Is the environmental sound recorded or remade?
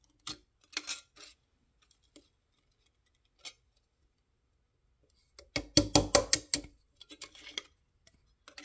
recorded